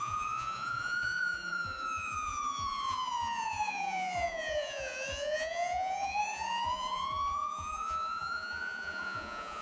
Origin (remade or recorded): remade